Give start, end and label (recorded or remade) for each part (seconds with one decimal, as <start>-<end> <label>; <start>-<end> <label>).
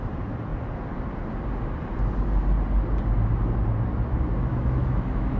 0.0-4.5 recorded; 4.5-5.4 remade